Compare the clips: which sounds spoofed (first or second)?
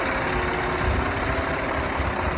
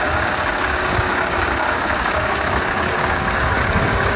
second